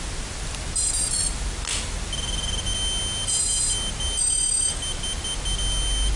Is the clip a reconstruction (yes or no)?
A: no